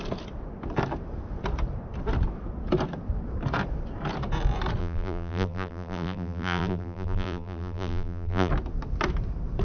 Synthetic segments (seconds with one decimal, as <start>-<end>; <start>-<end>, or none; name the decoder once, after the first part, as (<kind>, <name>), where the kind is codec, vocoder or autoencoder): 4.8-8.5 (vocoder, BigVGAN v2)